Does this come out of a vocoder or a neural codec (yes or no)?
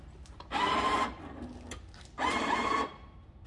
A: no